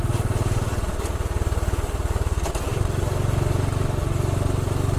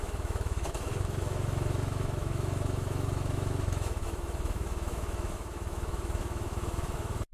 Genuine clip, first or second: first